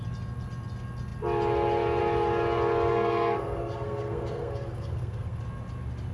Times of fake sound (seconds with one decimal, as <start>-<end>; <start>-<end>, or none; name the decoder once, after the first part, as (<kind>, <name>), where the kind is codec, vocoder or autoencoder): 2.9-5.4 (codec, SNAC)